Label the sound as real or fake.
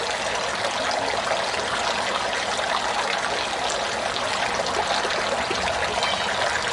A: real